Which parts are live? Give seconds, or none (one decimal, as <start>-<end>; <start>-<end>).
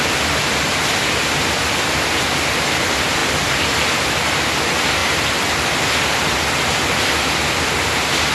0.0-8.3